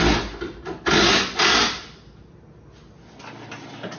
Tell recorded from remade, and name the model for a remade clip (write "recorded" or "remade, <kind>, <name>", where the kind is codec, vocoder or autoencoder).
recorded